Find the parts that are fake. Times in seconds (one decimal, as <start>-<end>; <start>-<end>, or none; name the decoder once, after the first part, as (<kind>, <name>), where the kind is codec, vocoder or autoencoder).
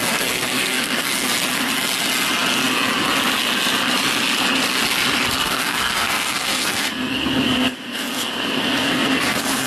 0.0-1.1 (codec, SNAC); 5.4-9.7